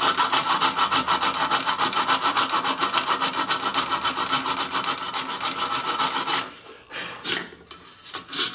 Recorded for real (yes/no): yes